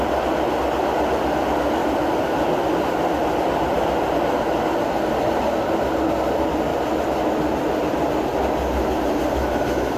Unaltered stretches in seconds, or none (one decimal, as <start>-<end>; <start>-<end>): 0.0-10.0